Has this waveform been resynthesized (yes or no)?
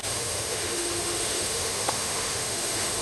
yes